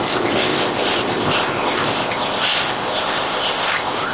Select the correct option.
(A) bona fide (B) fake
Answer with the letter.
B